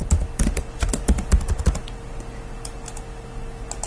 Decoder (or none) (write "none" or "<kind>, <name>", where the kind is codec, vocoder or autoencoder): none